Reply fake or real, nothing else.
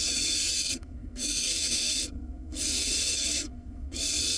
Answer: fake